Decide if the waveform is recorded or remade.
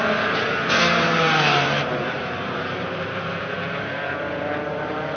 remade